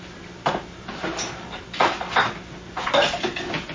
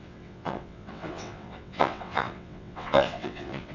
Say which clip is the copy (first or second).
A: second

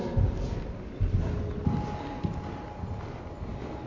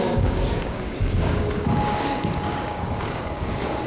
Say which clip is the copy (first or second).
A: second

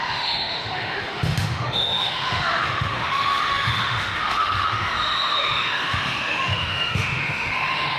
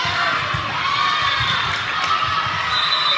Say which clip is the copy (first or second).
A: first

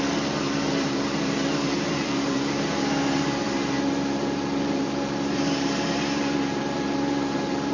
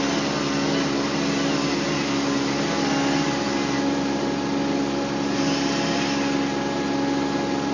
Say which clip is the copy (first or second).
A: first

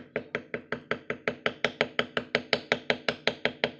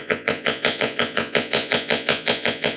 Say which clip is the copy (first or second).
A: second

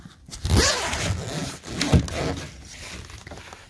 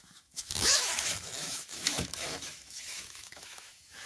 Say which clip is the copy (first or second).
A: second